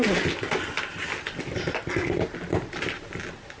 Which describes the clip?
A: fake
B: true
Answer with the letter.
B